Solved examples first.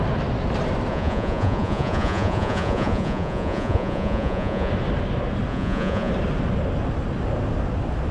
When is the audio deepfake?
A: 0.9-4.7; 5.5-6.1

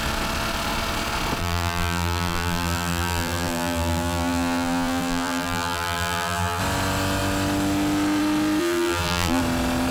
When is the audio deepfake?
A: 1.4-6.6; 8.6-9.4

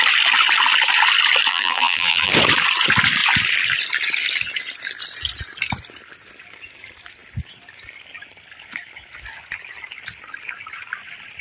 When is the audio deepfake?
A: 1.5-2.3

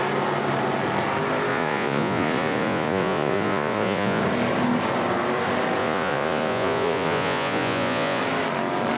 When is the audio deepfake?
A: 1.5-4.2; 5.8-8.2

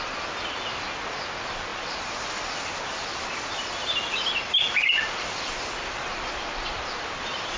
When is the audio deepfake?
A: none